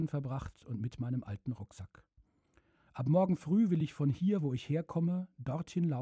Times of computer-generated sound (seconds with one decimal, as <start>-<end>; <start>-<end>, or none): 0.0-1.8; 2.2-4.4